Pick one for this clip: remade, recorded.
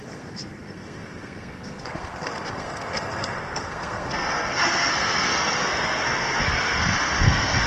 remade